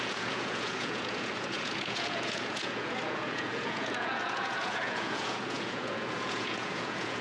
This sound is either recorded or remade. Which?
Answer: remade